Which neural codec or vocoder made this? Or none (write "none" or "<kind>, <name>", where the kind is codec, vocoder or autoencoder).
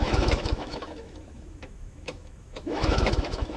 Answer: autoencoder, DAC-VAE